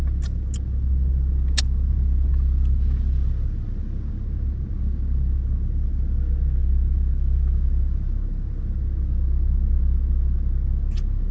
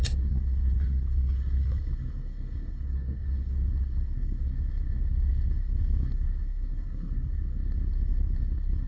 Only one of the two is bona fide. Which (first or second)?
first